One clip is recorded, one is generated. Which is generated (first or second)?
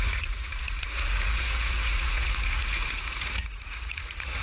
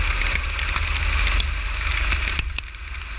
first